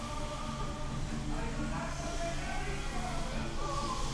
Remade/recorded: recorded